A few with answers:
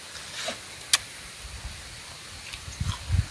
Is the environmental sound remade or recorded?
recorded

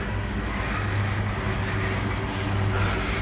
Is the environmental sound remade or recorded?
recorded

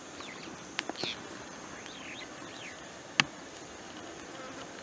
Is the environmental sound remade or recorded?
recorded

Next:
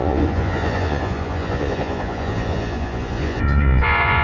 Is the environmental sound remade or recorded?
remade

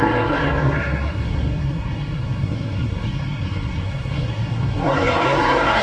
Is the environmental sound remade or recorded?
remade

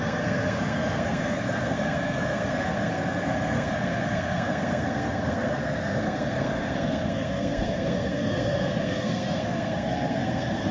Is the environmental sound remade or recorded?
remade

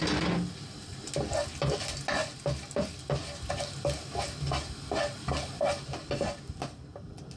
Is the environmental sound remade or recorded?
recorded